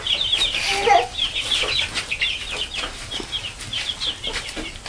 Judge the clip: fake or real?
real